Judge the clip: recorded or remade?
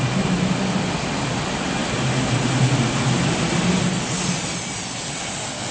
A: recorded